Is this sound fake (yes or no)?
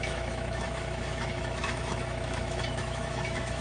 yes